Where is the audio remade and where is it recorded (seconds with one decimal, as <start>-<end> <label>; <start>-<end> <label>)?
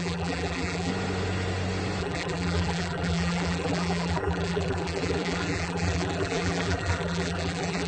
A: 0.0-0.9 remade; 0.9-2.0 recorded; 2.0-7.9 remade